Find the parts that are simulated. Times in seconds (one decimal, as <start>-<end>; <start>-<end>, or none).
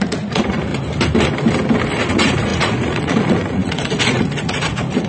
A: 0.0-0.7; 2.1-5.1